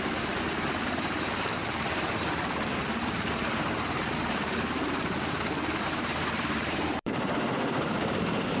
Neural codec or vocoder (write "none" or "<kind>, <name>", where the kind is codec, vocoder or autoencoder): vocoder, BigVGAN v2